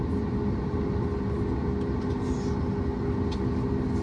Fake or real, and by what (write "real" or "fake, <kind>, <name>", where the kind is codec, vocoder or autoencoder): real